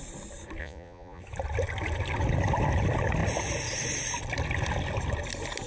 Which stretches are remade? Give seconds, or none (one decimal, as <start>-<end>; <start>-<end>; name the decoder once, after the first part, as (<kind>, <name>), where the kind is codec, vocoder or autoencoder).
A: 0.6-1.2 (vocoder, Vocos)

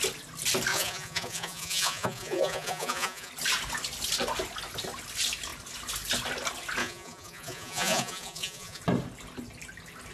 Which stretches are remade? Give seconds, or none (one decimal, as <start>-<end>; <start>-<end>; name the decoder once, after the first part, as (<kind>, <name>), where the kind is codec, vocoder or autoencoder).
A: 0.7-3.3 (vocoder, Vocos); 6.8-8.8

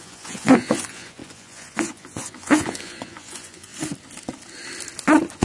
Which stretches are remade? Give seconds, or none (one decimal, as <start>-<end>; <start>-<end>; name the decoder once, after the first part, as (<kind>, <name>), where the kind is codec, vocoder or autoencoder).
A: 0.0-3.7 (vocoder, Vocos)

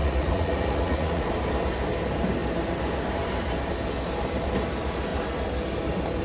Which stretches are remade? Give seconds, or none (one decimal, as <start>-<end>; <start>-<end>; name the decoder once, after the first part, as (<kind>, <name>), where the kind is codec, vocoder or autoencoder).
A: 0.0-1.3 (vocoder, Vocos)